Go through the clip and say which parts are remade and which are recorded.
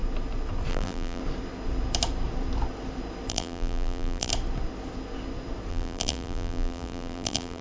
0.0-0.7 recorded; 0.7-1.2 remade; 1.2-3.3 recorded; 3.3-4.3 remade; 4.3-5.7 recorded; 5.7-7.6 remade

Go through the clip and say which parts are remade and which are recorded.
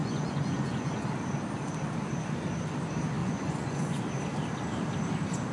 0.0-1.1 remade; 1.1-3.2 recorded; 3.2-4.0 remade; 4.0-5.5 recorded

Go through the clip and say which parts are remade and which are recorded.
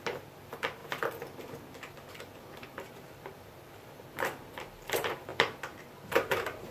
0.0-0.8 remade; 0.8-2.1 recorded; 2.1-6.7 remade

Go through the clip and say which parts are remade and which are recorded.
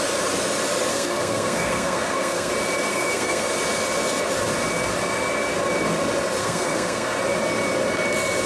0.0-0.9 recorded; 0.9-2.5 remade; 2.5-2.9 recorded; 2.9-3.5 remade; 3.5-6.4 recorded; 6.4-7.2 remade; 7.2-8.5 recorded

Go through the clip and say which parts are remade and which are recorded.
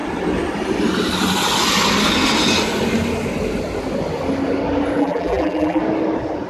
0.0-5.0 recorded; 5.0-5.8 remade; 5.8-6.5 recorded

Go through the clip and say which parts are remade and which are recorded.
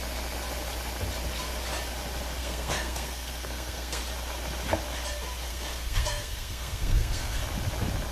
0.0-2.4 recorded; 2.4-4.0 remade; 4.0-5.5 recorded; 5.5-7.4 remade; 7.4-8.1 recorded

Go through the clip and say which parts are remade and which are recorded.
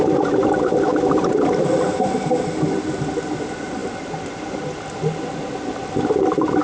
0.0-6.6 recorded